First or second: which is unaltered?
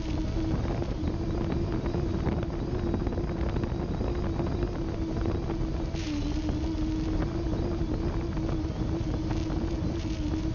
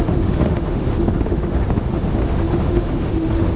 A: first